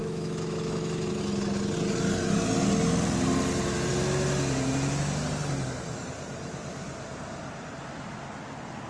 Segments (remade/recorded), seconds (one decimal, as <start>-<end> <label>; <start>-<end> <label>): 0.0-1.1 remade; 1.1-8.9 recorded